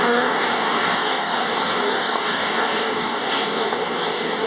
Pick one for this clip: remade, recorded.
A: remade